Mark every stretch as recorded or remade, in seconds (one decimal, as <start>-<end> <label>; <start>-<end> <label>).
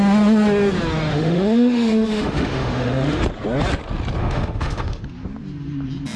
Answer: 0.0-1.1 recorded; 1.1-3.2 remade; 3.2-4.2 recorded; 4.2-5.0 remade; 5.0-6.2 recorded